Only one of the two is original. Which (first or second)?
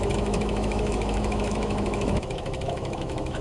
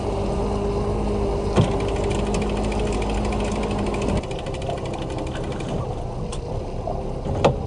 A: second